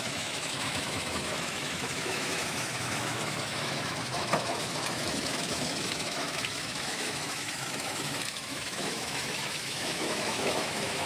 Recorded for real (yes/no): no